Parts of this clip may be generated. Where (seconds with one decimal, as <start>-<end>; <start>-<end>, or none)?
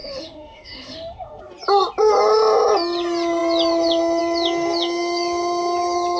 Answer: 0.0-1.4